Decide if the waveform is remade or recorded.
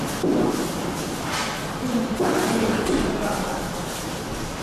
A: remade